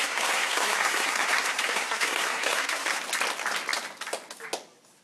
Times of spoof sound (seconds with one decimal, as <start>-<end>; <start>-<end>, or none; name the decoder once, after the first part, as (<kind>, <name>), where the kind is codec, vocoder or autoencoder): 0.0-3.0 (codec, SNAC)